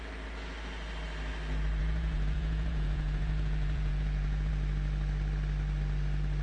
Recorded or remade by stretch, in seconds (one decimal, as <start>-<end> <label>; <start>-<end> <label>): 0.0-1.8 recorded; 1.8-4.5 remade; 4.5-6.4 recorded